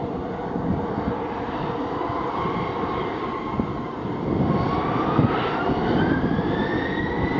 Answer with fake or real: real